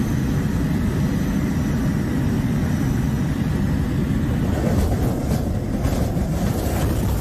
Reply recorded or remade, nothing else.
recorded